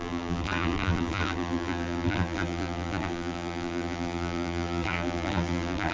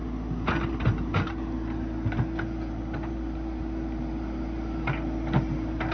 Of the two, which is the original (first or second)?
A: second